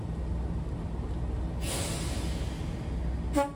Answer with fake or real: real